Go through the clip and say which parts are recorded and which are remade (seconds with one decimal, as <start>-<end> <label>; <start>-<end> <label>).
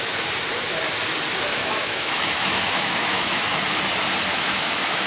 0.0-1.5 recorded; 1.5-3.6 remade; 3.6-4.3 recorded; 4.3-5.1 remade